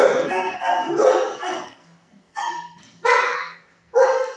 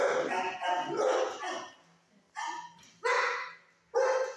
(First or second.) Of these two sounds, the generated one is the first